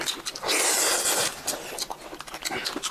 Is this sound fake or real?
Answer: real